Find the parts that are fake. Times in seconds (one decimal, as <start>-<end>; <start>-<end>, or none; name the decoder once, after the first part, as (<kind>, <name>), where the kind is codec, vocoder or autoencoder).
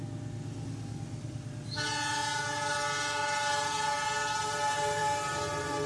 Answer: none